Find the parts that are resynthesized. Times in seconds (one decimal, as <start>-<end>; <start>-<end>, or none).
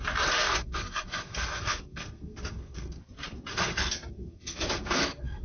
0.4-3.0; 3.5-5.4